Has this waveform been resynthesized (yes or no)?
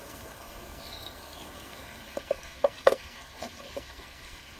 yes